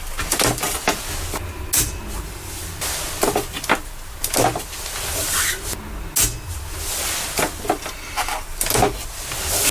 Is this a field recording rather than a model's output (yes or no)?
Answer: yes